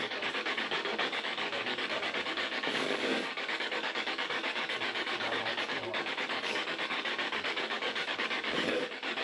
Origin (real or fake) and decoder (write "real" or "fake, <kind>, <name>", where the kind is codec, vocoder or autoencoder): fake, codec, DAC